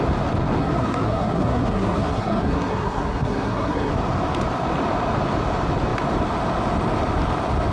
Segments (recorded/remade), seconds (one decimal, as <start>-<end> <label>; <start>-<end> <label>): 0.0-0.6 recorded; 0.6-3.9 remade; 3.9-7.7 recorded